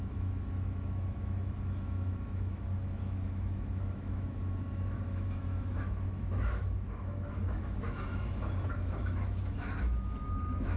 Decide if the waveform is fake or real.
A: fake